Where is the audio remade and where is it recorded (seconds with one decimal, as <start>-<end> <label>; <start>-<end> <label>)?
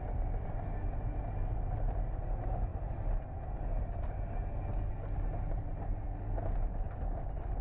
0.0-7.6 recorded